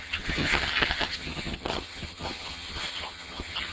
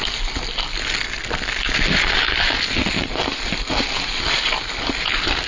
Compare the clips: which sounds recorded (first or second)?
second